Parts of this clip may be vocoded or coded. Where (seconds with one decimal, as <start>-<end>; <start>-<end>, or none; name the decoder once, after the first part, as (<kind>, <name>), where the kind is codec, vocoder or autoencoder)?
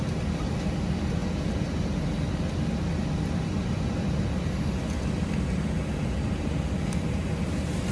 none